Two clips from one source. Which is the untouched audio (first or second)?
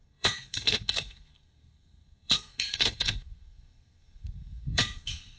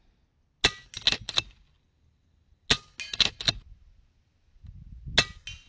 second